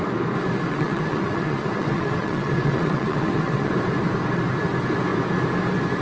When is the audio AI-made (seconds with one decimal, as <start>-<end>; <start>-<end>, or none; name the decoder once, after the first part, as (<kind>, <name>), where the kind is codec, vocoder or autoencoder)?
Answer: 0.7-3.7 (vocoder, WaveNeXt)